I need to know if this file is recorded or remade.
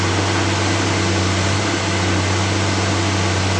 recorded